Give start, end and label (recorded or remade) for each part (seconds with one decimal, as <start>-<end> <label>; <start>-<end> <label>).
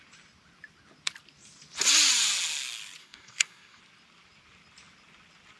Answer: 0.0-3.0 recorded; 3.0-3.8 remade; 3.8-5.6 recorded